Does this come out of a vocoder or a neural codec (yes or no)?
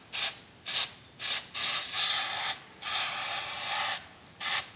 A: no